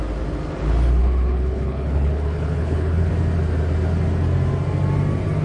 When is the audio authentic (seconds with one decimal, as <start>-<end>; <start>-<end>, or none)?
0.0-1.0; 3.1-5.4